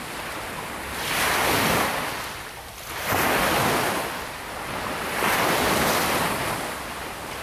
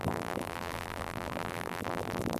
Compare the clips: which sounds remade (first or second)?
second